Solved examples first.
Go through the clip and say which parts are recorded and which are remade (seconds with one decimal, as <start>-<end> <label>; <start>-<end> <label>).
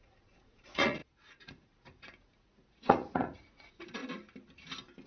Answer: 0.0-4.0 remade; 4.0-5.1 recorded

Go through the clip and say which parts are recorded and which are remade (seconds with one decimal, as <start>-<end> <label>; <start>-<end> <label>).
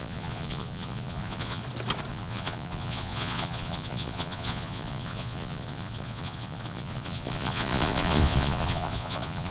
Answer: 0.0-1.6 remade; 1.6-2.1 recorded; 2.1-9.5 remade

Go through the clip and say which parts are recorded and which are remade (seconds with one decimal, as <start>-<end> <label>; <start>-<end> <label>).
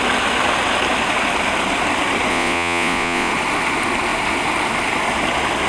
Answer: 0.0-2.3 recorded; 2.3-3.3 remade; 3.3-5.7 recorded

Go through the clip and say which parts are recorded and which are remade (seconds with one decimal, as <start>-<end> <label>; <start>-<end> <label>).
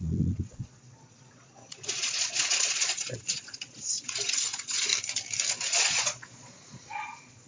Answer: 0.0-4.9 remade; 4.9-5.5 recorded; 5.5-7.5 remade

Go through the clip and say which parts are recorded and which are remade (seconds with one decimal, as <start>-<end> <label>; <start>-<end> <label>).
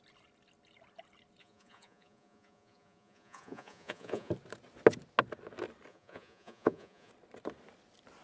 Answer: 0.0-1.4 recorded; 1.4-4.3 remade; 4.3-5.9 recorded; 5.9-7.1 remade; 7.1-8.2 recorded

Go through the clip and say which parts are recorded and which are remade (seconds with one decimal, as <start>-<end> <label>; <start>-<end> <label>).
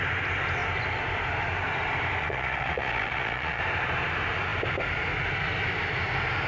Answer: 0.0-2.2 recorded; 2.2-3.6 remade; 3.6-6.5 recorded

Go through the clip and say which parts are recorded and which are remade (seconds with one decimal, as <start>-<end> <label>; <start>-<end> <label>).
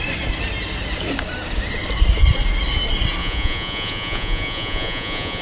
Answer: 0.0-3.2 recorded; 3.2-5.4 remade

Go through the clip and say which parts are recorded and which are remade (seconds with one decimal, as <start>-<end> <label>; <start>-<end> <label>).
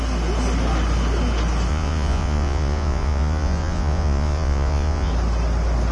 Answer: 0.0-1.7 recorded; 1.7-5.1 remade; 5.1-5.9 recorded